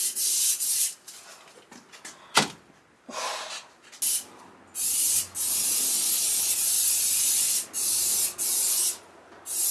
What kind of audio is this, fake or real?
real